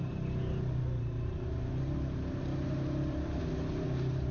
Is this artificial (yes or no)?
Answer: no